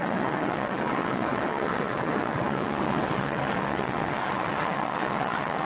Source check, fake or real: fake